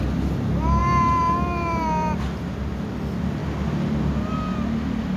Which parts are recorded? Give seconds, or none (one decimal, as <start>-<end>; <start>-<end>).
0.0-5.2